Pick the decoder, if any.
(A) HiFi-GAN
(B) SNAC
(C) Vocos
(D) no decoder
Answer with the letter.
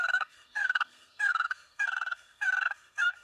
B